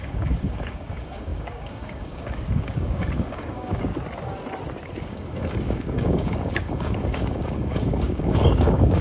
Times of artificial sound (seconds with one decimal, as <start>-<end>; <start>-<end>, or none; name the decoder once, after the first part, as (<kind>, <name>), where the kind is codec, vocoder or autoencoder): 0.0-3.9 (codec, DAC); 5.0-9.0